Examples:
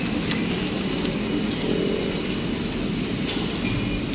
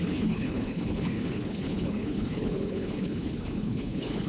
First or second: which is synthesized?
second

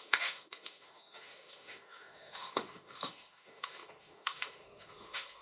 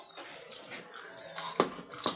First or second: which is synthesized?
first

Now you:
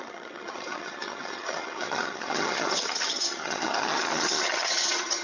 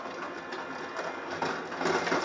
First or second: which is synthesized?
first